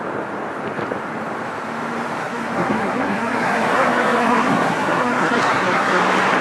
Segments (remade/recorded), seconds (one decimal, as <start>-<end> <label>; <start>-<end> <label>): 0.0-2.2 recorded; 2.2-6.0 remade; 6.0-6.4 recorded